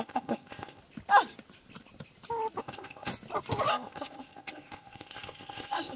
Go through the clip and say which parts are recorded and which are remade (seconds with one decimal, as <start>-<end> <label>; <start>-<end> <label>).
0.0-0.8 remade; 0.8-2.6 recorded; 2.6-3.1 remade; 3.1-3.7 recorded; 3.7-6.0 remade